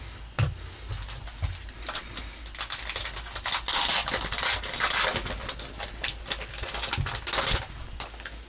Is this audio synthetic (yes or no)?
no